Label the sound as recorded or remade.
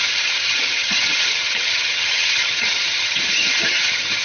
remade